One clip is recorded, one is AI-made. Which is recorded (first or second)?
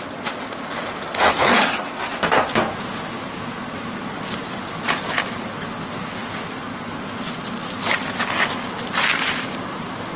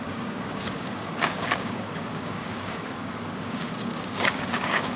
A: first